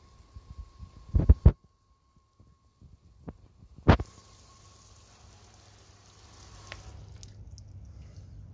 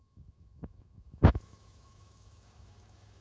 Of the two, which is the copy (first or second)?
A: second